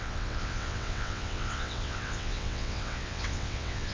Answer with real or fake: fake